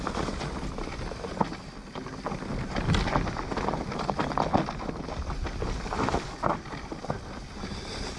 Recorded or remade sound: recorded